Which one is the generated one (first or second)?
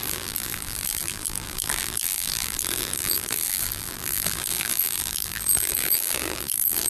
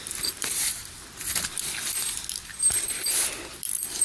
first